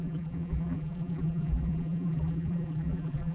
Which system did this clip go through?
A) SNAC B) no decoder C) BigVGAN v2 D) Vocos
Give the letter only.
C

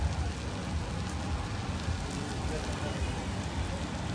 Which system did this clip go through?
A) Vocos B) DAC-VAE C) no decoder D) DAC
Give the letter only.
C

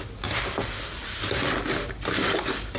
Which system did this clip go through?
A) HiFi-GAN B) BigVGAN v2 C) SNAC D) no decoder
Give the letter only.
D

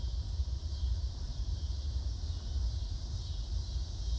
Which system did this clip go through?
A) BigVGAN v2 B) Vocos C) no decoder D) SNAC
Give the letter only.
A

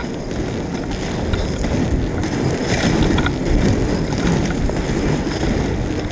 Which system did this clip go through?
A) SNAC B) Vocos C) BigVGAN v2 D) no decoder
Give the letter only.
D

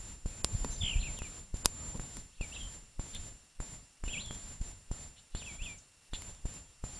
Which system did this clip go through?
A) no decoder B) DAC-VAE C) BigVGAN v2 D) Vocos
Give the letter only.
A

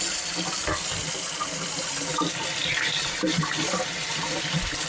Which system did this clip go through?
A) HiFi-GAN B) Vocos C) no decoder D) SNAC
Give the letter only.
C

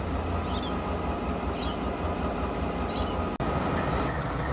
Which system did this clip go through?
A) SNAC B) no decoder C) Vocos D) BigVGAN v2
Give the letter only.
B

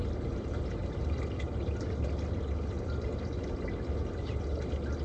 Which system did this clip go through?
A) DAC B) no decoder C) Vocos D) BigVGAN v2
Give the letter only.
B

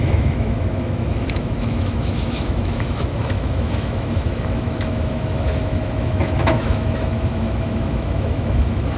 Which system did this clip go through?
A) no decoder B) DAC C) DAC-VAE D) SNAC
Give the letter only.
C